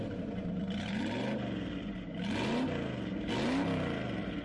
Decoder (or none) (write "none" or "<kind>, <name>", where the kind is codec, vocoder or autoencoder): none